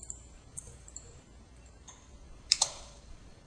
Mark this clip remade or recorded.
remade